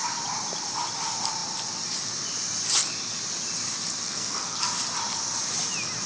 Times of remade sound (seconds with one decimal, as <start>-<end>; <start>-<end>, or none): 4.0-4.6